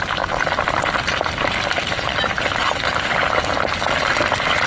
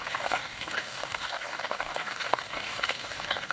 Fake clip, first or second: second